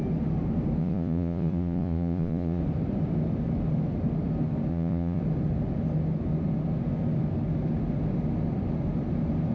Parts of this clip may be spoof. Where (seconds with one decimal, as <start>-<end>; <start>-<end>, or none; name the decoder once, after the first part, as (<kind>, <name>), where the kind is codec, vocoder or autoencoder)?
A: 0.8-2.6 (vocoder, Vocos); 4.7-5.2